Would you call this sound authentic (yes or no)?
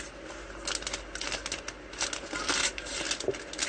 yes